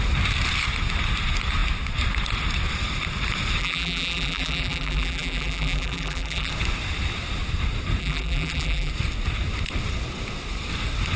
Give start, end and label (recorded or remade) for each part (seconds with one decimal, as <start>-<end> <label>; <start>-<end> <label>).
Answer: 0.0-3.6 recorded; 3.6-6.5 remade; 6.5-8.0 recorded; 8.0-8.9 remade; 8.9-11.2 recorded